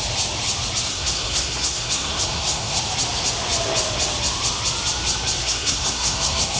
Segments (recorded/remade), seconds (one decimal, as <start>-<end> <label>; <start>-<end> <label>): 0.0-0.9 recorded; 0.9-2.8 remade; 2.8-5.4 recorded; 5.4-6.6 remade